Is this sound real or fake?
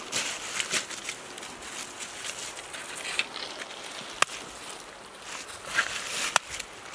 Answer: real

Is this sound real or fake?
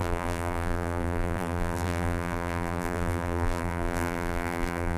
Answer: fake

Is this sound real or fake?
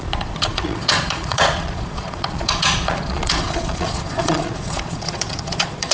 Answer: fake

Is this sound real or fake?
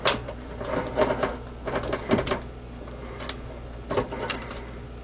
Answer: real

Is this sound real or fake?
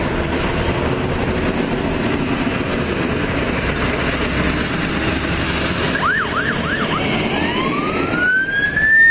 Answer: real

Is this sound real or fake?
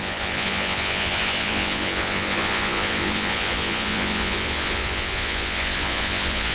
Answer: fake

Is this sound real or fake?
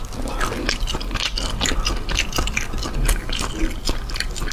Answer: real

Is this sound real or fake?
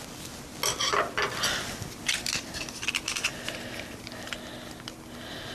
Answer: real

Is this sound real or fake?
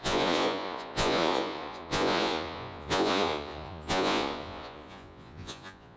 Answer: fake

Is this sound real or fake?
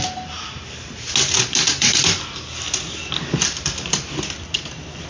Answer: real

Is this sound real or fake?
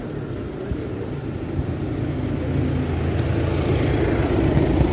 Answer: real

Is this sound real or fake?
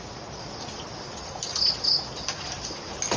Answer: real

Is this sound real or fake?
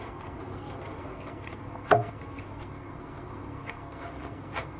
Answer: fake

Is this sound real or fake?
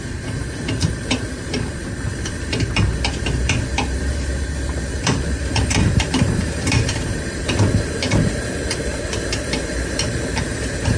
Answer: fake